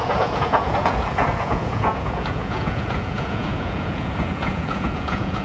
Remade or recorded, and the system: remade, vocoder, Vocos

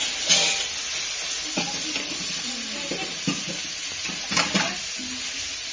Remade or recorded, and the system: recorded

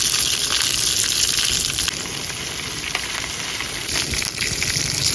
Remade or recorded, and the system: recorded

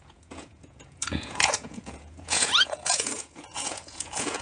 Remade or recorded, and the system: remade, vocoder, Vocos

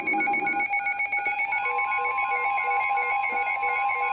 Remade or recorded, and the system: recorded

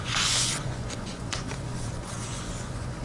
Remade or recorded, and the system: remade, vocoder, Vocos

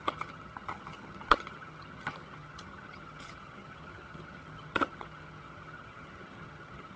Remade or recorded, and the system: remade, vocoder, HiFi-GAN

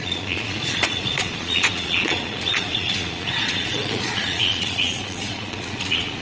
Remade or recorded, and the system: remade, vocoder, Vocos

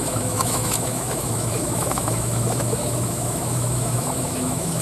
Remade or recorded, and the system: remade, autoencoder, DAC-VAE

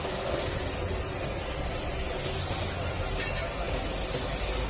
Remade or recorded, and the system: recorded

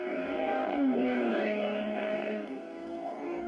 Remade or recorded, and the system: remade, codec, DAC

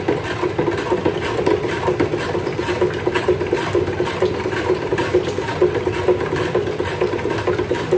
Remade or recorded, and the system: remade, vocoder, BigVGAN v2